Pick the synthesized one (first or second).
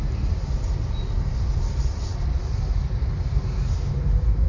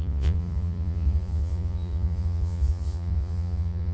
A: second